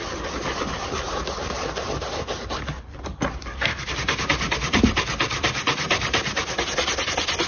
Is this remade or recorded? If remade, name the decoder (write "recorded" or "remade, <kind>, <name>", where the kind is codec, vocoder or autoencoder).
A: recorded